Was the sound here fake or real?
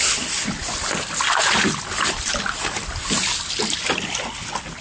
real